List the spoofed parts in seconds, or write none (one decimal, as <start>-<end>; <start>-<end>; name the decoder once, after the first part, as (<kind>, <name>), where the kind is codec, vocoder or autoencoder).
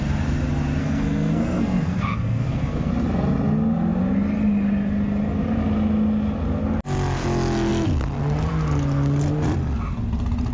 0.8-2.9 (codec, SNAC)